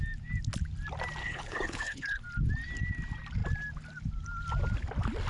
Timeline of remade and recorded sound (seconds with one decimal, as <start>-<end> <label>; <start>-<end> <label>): 0.0-1.2 recorded; 1.2-2.2 remade; 2.2-5.3 recorded